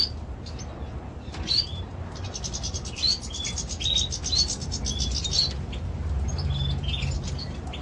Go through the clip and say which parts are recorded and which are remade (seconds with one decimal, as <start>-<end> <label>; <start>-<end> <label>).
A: 0.0-7.8 recorded